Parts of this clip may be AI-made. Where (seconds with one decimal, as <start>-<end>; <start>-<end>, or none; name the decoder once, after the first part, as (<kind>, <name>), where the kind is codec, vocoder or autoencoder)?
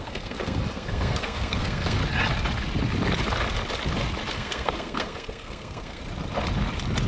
0.0-2.0 (codec, SNAC); 4.3-6.0